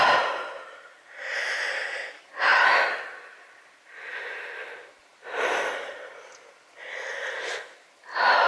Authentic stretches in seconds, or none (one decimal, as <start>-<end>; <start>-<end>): 0.0-8.5